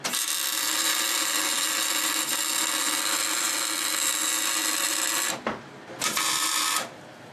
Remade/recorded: recorded